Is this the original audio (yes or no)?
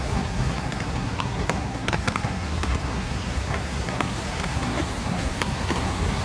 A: no